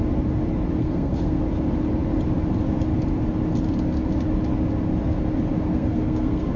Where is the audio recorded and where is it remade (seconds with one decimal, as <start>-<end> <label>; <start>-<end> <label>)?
0.0-0.8 recorded; 0.8-1.4 remade; 1.4-5.7 recorded; 5.7-6.6 remade

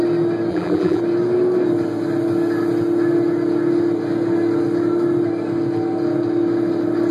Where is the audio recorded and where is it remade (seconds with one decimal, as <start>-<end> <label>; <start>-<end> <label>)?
0.0-0.5 recorded; 0.5-1.0 remade; 1.0-7.1 recorded

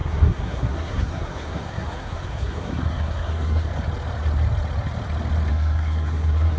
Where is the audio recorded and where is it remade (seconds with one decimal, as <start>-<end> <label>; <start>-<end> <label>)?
0.0-3.7 remade; 3.7-5.5 recorded; 5.5-6.6 remade

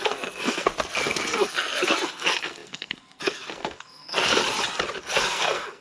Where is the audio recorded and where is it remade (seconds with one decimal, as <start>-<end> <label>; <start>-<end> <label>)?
0.0-4.4 remade; 4.4-5.0 recorded; 5.0-5.8 remade

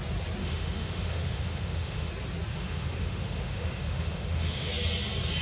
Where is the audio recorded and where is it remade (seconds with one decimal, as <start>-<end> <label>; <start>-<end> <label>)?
0.0-0.4 recorded; 0.4-2.1 remade; 2.1-2.5 recorded; 2.5-4.7 remade; 4.7-5.4 recorded

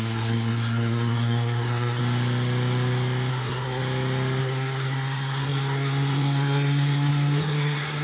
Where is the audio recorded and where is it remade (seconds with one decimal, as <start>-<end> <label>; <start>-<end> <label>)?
0.0-2.0 remade; 2.0-3.3 recorded; 3.3-3.8 remade; 3.8-4.4 recorded; 4.4-8.0 remade

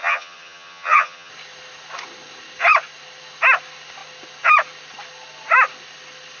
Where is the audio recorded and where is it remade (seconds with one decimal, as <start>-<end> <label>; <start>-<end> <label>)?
0.0-1.3 remade; 1.3-6.4 recorded